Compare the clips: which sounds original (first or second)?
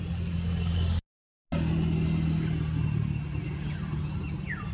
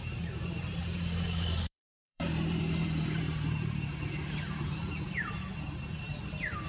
first